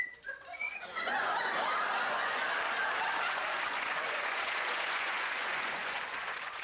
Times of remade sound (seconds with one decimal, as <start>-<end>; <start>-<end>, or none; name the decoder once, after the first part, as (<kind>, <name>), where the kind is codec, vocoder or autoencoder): 0.0-1.5 (vocoder, Vocos); 2.0-2.4; 3.2-6.6